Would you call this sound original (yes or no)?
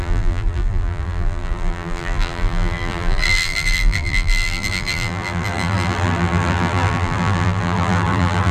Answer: no